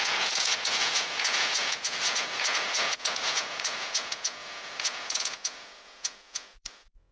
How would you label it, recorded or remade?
remade